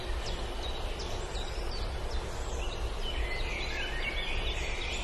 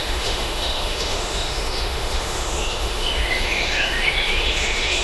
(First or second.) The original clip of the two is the first